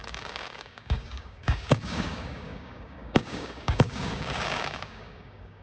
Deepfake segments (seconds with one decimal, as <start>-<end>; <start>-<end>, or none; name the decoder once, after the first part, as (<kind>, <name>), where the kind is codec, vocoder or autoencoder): 0.0-5.6 (codec, DAC)